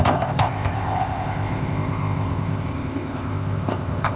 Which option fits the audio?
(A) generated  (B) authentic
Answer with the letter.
A